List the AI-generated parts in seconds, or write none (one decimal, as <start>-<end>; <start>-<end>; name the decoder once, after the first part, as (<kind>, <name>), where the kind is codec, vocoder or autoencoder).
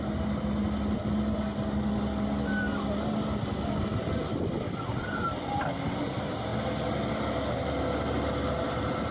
none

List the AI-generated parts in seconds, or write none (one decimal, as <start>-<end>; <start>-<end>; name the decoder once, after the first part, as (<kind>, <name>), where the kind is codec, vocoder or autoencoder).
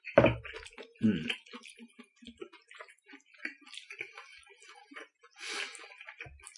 none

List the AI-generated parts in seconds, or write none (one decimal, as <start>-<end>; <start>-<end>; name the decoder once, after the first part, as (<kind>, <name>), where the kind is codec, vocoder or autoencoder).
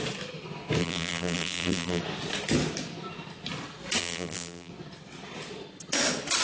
0.8-2.0 (vocoder, BigVGAN v2); 4.0-4.7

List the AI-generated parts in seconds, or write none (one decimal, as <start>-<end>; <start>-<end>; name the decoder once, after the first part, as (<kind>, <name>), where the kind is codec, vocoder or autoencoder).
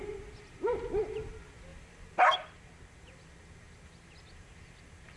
none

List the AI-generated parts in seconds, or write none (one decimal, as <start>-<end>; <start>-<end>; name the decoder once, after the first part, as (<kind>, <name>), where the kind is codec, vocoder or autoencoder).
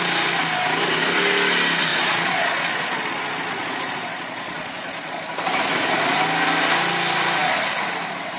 1.9-5.2 (vocoder, Vocos)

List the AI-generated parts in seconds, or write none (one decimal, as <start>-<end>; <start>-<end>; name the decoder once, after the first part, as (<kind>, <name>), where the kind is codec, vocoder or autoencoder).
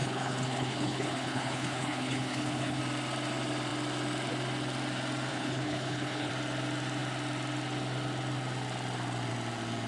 0.0-2.8 (codec, HILCodec); 5.3-6.3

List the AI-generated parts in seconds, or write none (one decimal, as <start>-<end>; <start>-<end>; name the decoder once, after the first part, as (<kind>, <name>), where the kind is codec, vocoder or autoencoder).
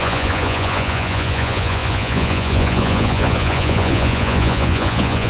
0.0-5.3 (vocoder, Vocos)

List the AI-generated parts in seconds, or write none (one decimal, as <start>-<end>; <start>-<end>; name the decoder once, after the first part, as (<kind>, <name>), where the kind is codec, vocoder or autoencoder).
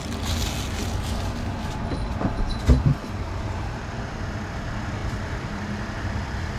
5.0-6.6 (vocoder, BigVGAN v2)